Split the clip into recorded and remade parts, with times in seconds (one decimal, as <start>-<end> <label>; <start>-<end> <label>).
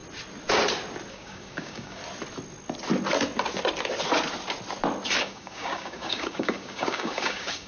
0.0-1.1 recorded; 1.1-2.0 remade; 2.0-5.2 recorded; 5.2-7.7 remade